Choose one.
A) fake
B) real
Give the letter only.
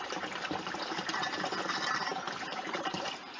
B